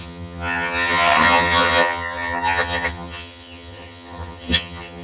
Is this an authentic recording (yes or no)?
no